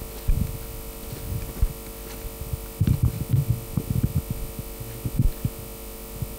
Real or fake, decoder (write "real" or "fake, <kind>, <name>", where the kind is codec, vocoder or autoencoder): real